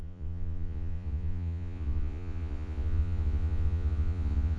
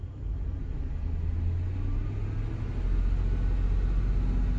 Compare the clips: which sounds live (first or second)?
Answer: second